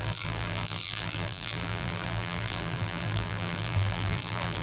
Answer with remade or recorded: remade